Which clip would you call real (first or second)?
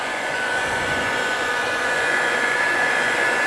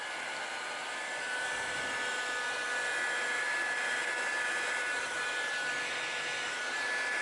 second